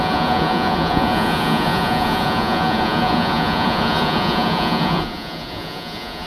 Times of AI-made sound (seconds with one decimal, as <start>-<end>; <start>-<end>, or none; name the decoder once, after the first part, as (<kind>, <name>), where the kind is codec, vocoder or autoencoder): 0.0-6.3 (vocoder, Vocos)